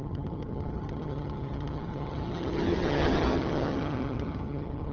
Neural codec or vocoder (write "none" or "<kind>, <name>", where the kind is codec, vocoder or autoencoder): vocoder, HiFi-GAN